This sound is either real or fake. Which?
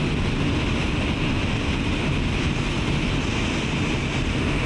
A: real